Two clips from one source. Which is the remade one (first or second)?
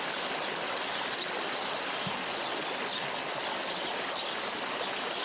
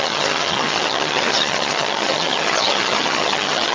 second